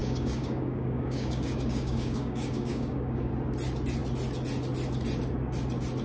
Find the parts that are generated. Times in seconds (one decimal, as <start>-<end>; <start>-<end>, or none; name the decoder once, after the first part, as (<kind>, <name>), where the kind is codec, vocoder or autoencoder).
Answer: 0.0-3.3 (codec, DAC)